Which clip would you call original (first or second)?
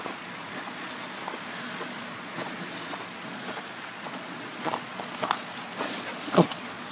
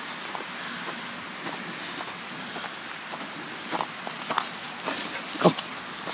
second